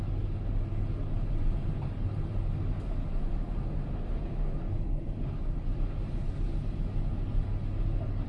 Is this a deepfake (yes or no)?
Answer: no